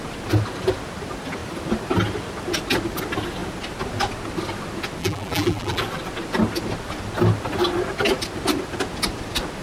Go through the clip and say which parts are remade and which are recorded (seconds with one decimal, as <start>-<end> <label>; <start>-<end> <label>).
0.0-5.0 recorded; 5.0-5.8 remade; 5.8-9.6 recorded